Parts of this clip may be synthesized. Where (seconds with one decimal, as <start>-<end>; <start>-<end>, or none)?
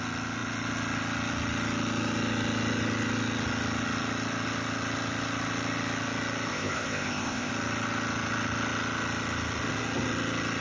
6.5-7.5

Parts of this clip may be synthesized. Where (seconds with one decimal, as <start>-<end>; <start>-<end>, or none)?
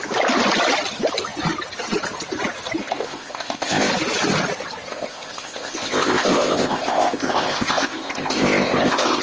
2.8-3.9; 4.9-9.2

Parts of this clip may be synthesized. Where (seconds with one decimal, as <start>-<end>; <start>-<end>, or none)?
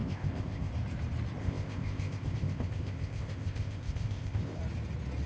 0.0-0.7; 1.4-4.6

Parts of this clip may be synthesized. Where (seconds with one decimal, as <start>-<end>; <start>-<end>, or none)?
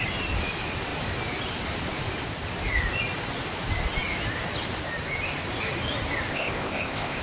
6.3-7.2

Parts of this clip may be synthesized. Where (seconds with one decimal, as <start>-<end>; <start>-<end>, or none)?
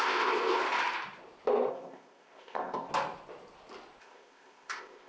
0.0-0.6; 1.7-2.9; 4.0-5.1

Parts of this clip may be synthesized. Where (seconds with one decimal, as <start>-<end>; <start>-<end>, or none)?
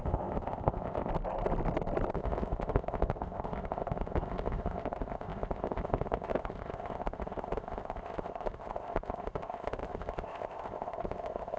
0.0-1.1; 2.1-11.6